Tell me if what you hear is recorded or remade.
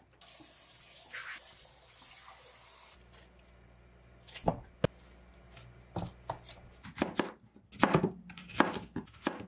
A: recorded